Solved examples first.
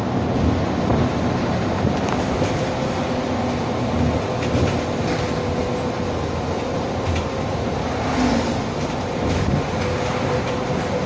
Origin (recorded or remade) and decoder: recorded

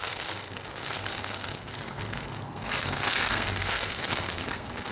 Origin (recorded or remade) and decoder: remade, codec, SNAC